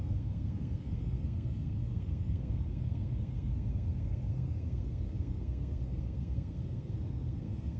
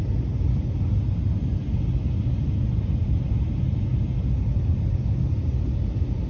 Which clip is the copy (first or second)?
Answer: first